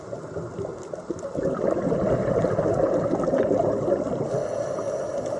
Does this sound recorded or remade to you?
recorded